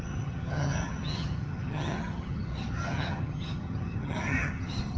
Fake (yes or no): yes